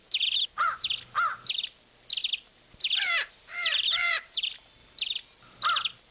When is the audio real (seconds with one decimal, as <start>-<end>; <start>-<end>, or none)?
0.7-2.5; 4.7-6.1